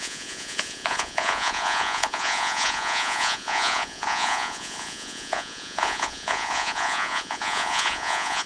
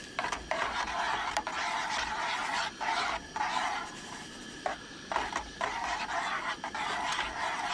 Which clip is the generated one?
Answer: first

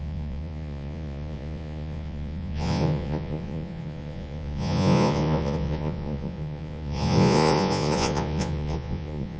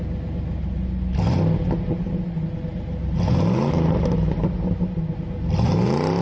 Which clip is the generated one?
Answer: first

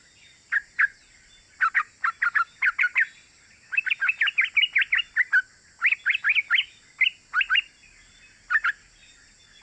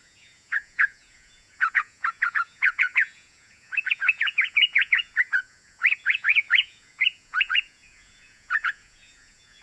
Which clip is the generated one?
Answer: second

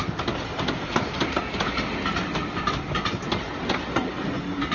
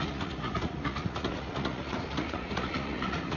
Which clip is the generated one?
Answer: second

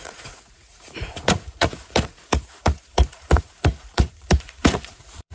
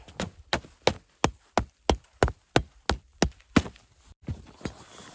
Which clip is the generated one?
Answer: first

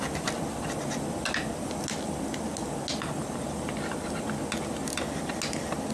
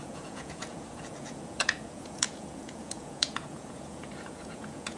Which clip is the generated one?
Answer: second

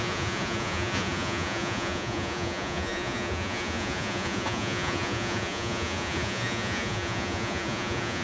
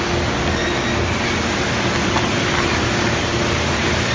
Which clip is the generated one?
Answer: first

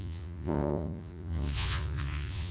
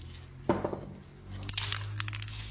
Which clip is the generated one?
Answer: first